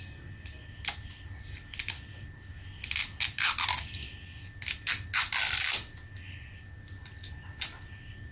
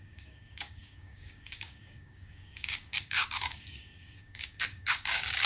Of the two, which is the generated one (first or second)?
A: second